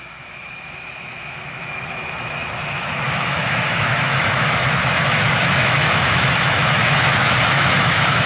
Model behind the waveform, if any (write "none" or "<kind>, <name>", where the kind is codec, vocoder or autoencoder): autoencoder, DAC-VAE